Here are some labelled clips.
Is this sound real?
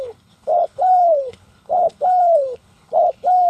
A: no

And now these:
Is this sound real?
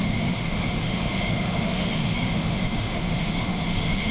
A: no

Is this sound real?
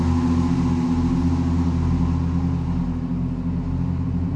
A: yes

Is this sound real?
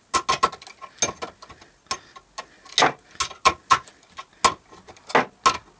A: yes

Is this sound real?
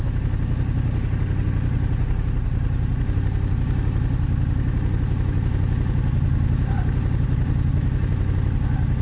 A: yes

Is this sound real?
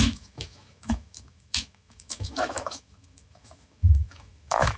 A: no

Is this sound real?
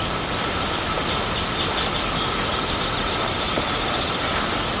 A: yes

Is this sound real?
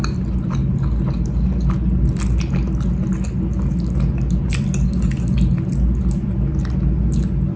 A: yes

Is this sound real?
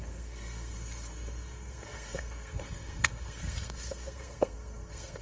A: no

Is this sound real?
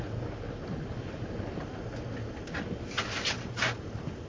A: yes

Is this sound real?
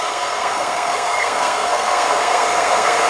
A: no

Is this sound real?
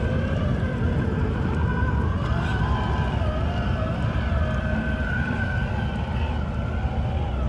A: yes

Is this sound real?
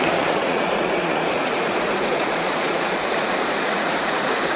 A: no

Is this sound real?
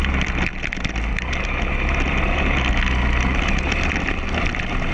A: yes